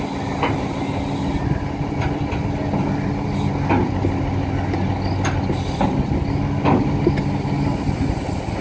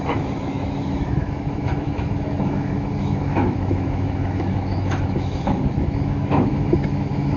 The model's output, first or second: second